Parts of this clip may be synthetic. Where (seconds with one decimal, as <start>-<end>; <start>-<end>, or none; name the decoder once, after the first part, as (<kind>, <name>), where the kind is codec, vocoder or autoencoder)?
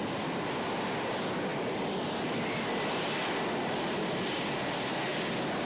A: none